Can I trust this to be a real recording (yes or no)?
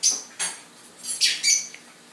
yes